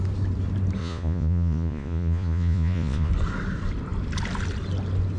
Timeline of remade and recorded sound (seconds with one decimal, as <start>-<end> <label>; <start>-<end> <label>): 0.0-0.8 recorded; 0.8-3.1 remade; 3.1-5.2 recorded